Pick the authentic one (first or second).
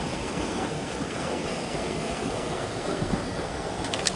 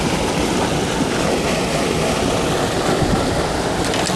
second